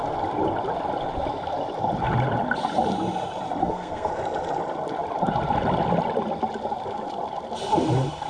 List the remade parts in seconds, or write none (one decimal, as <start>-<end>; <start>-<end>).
3.6-4.1

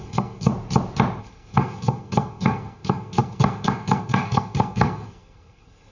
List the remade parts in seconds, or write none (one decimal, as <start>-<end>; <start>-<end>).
0.0-0.5; 1.2-5.9

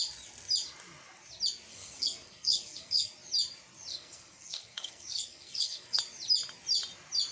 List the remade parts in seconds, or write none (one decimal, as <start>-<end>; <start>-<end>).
1.7-3.1; 3.9-6.0

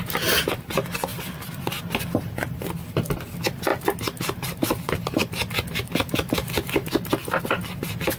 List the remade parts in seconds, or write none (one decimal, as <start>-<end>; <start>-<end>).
none